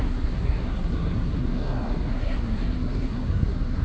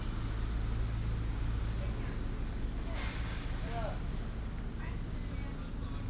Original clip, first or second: second